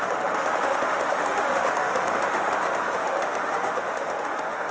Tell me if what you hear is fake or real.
fake